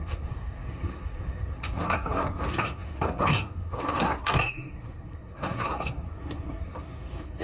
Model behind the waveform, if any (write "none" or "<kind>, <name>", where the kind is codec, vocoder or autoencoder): codec, SNAC